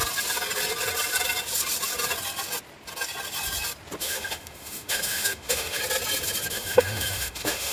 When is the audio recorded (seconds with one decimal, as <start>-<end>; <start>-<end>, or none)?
0.0-4.0; 5.8-6.5